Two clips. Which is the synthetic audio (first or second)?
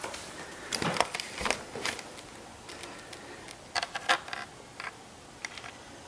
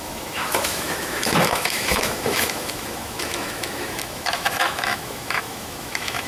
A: second